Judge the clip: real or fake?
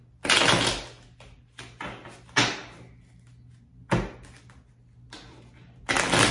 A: real